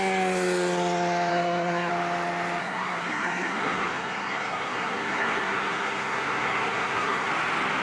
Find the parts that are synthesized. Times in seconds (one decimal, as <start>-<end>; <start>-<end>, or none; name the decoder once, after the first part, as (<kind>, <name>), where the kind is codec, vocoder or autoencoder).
1.3-1.9 (codec, SNAC); 2.6-7.3